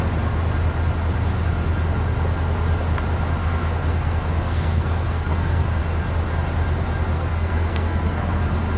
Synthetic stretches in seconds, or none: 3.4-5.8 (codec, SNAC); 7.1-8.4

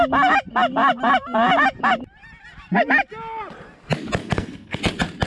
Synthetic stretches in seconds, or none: 4.2-4.8 (codec, SNAC)

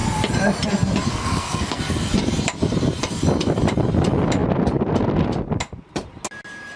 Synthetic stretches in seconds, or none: 1.1-1.8 (codec, SNAC)

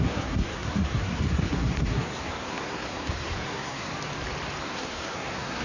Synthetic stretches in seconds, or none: 0.0-3.9 (codec, SNAC); 4.6-5.6

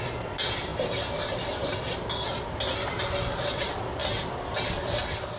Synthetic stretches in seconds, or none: none

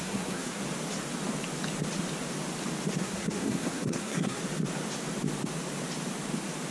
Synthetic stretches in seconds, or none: 0.0-0.6 (codec, SNAC); 3.0-4.4